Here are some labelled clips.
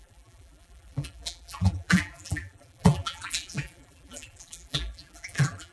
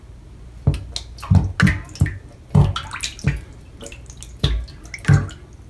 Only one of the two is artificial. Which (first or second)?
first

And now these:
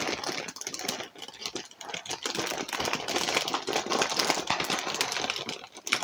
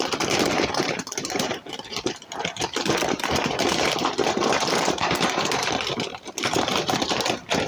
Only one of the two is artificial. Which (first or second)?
second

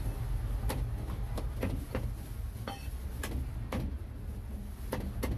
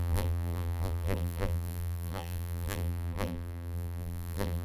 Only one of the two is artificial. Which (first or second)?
second